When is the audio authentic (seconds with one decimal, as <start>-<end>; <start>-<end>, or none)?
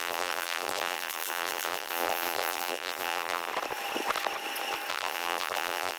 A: 3.5-4.9